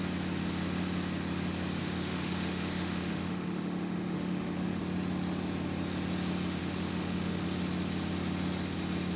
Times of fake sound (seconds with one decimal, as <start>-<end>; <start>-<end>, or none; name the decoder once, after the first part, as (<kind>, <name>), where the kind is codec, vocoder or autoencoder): 1.8-4.8 (autoencoder, DAC-VAE); 6.6-7.4